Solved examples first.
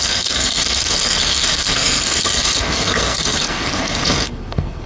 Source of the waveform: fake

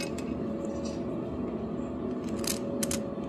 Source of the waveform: real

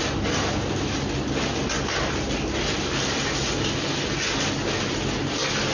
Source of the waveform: real